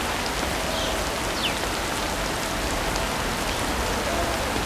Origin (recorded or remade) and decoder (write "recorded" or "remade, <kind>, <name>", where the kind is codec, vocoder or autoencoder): recorded